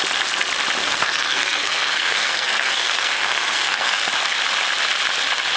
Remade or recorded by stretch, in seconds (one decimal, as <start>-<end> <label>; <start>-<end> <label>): 0.0-0.8 recorded; 0.8-4.1 remade; 4.1-5.6 recorded